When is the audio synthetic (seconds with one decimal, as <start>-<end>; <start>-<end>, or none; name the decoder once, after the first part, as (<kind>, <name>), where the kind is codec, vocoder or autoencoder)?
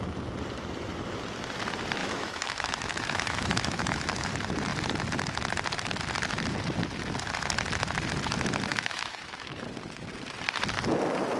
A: 2.0-4.3 (autoencoder, DAC-VAE); 8.7-9.5